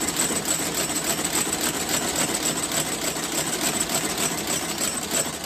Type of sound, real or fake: real